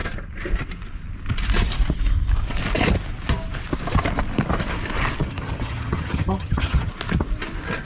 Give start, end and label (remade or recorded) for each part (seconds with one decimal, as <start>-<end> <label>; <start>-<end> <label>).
0.0-5.2 recorded; 5.2-6.9 remade; 6.9-7.8 recorded